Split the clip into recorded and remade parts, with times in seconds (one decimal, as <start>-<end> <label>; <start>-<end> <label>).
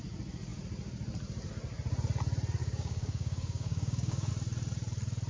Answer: 0.0-2.6 recorded; 2.6-4.3 remade; 4.3-5.3 recorded